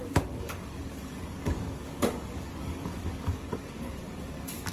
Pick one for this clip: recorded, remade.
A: remade